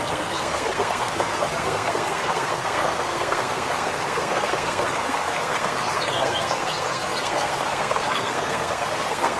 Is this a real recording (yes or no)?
no